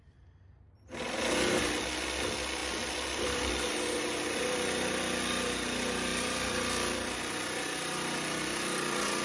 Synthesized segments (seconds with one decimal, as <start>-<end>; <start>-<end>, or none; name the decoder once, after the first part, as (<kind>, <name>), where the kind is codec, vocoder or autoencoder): 2.6-3.5 (vocoder, BigVGAN v2); 6.1-7.8